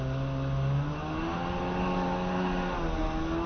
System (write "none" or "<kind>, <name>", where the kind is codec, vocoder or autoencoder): none